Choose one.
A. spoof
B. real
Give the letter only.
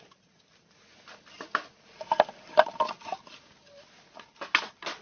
B